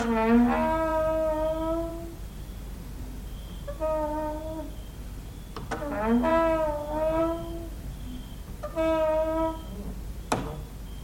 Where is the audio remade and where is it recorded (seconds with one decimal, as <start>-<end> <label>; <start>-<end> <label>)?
0.0-11.0 recorded